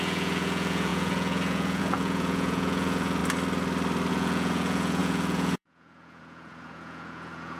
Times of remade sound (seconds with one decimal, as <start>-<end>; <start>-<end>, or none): 0.0-3.2; 4.1-7.6